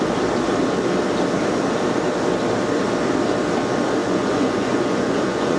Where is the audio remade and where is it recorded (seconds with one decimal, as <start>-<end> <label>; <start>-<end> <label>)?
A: 0.0-4.0 recorded; 4.0-5.6 remade